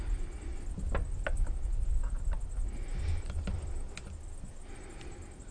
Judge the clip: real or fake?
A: real